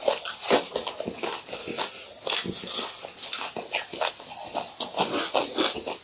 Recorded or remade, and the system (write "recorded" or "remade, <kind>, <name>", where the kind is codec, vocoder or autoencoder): recorded